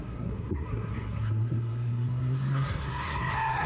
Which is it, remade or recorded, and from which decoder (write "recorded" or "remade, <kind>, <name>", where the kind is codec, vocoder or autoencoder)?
remade, codec, SNAC